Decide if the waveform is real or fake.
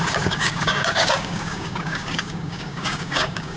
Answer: fake